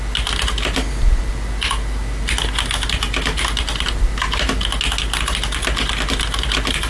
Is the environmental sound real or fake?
real